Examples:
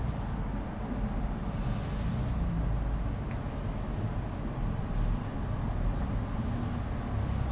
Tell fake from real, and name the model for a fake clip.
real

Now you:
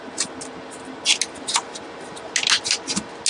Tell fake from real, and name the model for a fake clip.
real